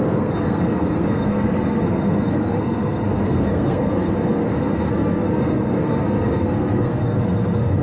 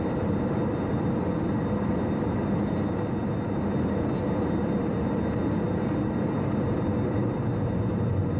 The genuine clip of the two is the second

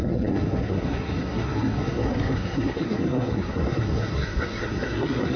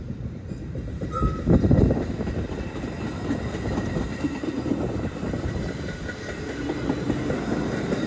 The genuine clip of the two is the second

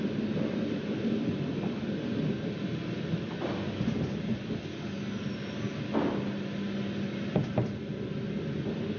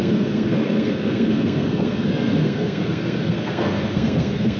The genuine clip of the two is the first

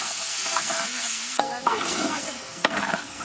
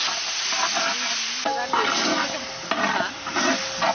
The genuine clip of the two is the second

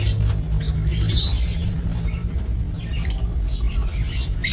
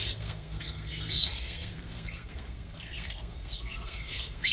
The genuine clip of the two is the first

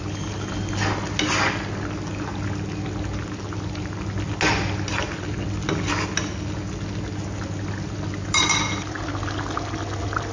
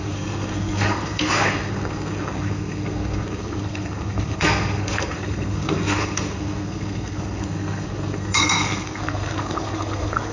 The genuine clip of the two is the first